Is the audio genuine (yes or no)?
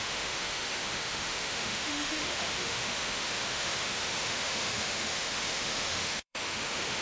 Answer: no